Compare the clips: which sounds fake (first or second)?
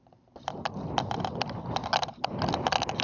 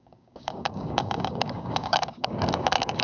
second